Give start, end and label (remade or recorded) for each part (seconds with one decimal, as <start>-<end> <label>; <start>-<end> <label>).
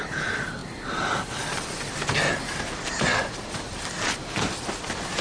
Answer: 0.0-5.2 recorded